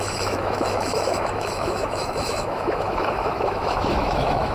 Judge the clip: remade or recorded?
remade